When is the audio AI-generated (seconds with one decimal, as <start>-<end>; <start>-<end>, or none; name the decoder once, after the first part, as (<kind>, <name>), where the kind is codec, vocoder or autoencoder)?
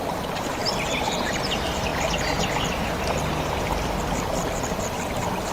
none